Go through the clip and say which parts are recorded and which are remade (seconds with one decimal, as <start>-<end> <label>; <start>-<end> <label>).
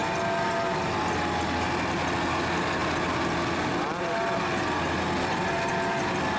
0.0-6.4 recorded